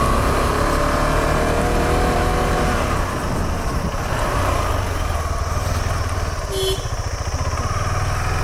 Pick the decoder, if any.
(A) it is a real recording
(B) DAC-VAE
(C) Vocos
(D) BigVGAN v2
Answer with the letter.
A